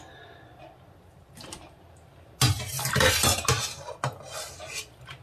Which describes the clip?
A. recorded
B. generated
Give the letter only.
A